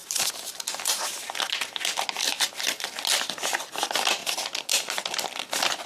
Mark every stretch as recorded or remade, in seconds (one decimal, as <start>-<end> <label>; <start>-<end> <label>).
0.0-0.8 remade; 0.8-2.2 recorded; 2.2-2.9 remade; 2.9-5.9 recorded